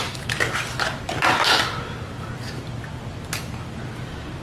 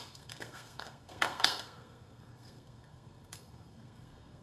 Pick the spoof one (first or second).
second